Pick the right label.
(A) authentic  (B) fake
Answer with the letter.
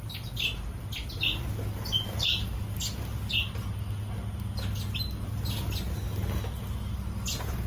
A